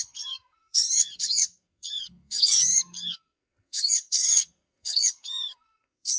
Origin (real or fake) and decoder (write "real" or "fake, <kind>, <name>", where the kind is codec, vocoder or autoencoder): fake, codec, SNAC